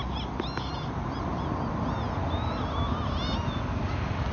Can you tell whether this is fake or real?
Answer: real